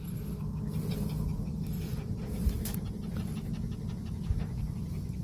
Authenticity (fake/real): real